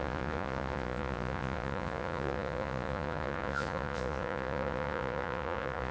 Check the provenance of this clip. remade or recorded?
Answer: remade